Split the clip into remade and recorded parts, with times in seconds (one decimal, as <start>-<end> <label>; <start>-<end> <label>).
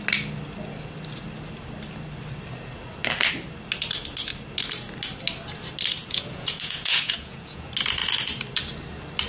0.0-6.0 recorded; 6.0-7.7 remade; 7.7-9.3 recorded